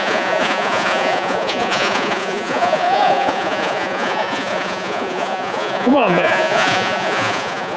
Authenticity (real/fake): fake